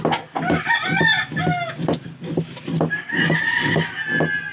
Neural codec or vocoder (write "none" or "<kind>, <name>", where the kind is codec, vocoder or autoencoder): none